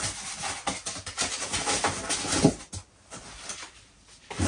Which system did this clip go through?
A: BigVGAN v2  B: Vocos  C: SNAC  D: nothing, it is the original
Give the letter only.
D